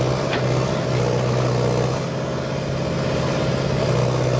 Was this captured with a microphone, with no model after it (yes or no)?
yes